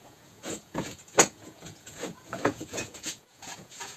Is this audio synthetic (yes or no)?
yes